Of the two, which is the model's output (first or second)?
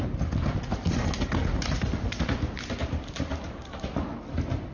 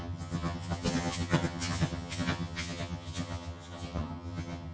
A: second